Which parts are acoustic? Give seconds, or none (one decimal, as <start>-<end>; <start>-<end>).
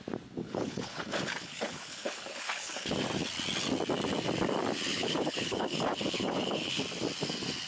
0.0-0.4; 2.9-4.9; 6.8-7.7